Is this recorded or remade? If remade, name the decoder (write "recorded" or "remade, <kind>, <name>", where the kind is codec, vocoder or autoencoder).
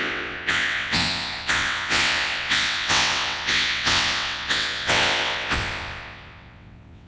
remade, vocoder, WaveNeXt